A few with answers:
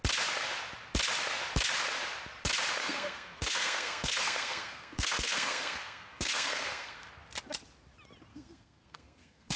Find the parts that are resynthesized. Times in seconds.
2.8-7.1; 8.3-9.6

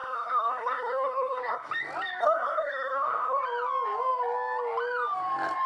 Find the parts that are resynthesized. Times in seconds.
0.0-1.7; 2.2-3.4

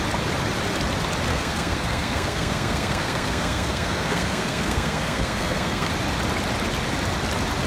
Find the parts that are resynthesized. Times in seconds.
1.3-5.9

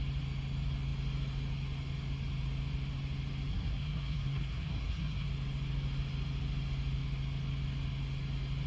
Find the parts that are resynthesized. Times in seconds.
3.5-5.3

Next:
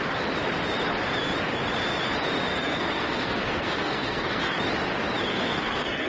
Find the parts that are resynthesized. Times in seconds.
2.5-4.5; 5.3-6.1

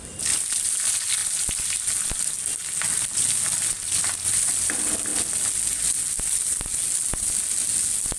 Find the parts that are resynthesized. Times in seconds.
none

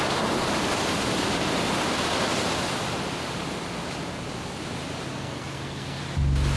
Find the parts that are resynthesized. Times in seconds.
5.1-6.0